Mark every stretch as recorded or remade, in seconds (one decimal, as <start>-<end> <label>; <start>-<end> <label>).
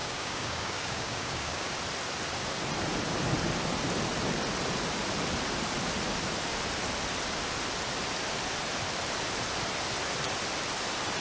0.0-1.8 remade; 1.8-11.2 recorded